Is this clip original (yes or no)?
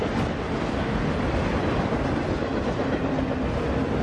yes